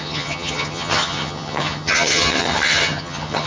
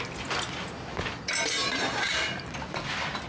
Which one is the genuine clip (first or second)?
second